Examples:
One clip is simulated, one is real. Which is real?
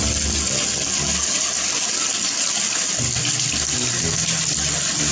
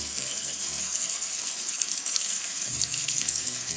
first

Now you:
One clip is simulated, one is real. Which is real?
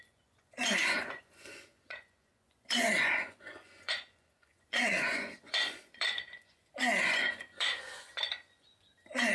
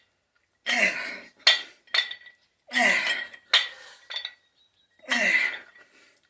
second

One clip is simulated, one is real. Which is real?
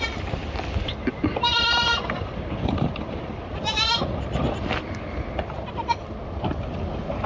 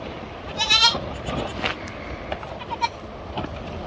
second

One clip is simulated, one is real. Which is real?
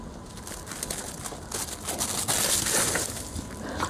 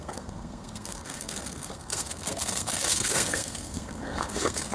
first